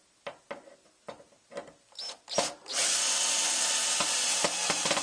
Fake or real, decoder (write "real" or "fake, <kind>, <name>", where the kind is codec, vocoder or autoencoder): real